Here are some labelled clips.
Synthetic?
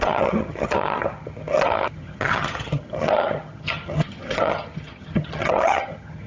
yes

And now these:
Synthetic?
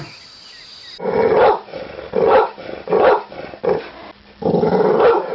no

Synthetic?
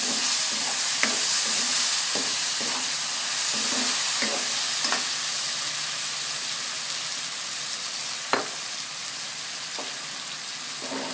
no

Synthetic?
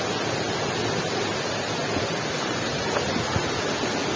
no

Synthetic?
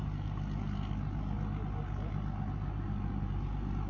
no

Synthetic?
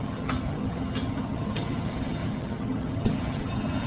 yes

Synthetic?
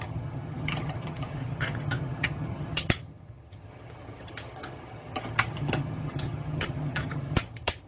yes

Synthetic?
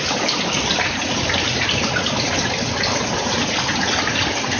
no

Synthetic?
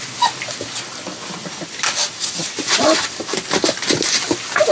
no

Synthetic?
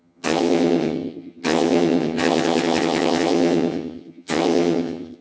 yes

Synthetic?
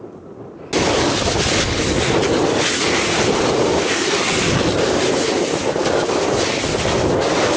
no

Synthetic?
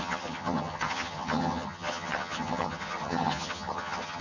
yes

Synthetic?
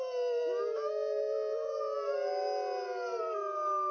no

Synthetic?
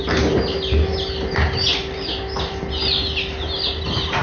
no